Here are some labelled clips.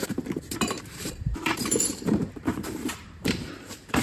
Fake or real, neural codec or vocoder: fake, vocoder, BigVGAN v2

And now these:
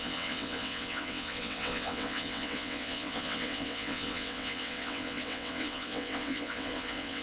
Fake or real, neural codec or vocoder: fake, vocoder, WaveNeXt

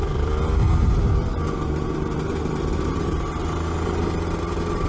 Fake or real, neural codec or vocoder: real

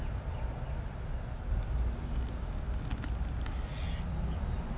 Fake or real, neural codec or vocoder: real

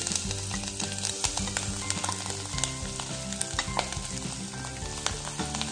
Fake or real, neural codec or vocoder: real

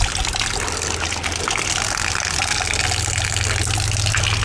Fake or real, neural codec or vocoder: real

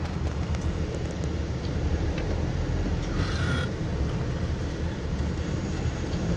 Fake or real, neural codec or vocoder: fake, vocoder, BigVGAN v2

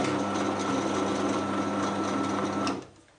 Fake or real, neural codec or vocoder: real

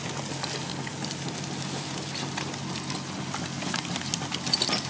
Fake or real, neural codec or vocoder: real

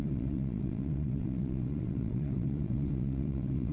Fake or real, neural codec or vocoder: fake, vocoder, WaveNeXt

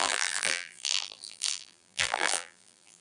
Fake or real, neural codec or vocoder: fake, vocoder, BigVGAN v2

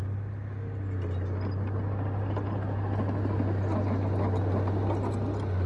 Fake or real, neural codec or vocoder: real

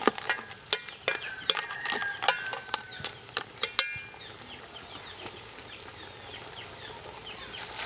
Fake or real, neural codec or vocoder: real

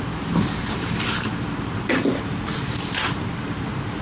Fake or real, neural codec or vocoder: fake, vocoder, BigVGAN v2